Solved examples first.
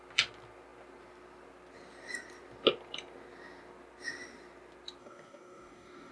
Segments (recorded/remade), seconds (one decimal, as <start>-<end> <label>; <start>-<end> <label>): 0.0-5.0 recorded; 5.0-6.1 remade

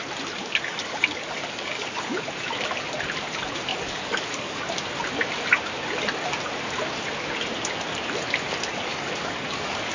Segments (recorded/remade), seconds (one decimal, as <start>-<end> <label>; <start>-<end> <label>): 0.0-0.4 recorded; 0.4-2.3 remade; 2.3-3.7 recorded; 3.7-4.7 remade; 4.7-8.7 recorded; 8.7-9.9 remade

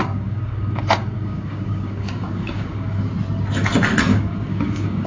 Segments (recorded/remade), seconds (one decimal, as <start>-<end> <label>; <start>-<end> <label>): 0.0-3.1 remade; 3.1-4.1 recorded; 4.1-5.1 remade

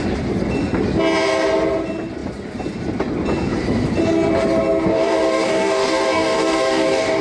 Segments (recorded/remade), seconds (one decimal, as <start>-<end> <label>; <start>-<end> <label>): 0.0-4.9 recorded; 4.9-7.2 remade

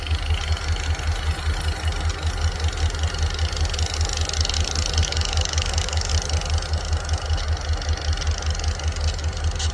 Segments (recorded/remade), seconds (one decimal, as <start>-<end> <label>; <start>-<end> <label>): 0.0-5.0 recorded; 5.0-6.1 remade; 6.1-9.7 recorded

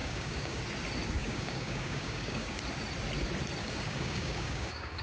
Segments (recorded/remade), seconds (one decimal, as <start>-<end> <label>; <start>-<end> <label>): 0.0-0.6 remade; 0.6-1.2 recorded; 1.2-2.6 remade; 2.6-3.6 recorded; 3.6-5.0 remade

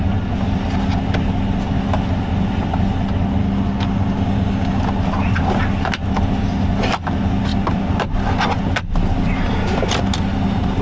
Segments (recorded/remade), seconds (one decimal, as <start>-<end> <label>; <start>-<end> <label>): 0.0-3.4 recorded; 3.4-4.8 remade; 4.8-10.8 recorded